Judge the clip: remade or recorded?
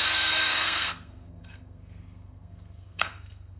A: remade